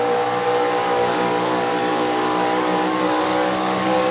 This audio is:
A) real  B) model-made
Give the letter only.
B